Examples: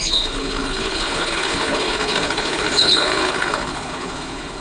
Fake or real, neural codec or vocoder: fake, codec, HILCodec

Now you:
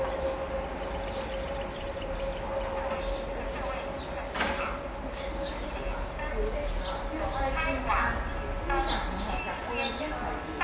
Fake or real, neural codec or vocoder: real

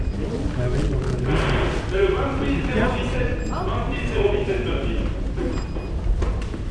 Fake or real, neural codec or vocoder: real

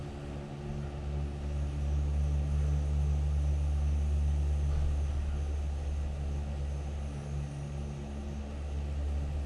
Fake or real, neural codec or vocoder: real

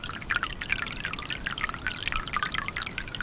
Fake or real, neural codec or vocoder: real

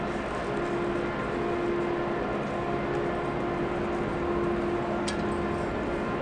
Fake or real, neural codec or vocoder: real